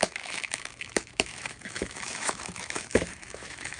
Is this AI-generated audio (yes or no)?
yes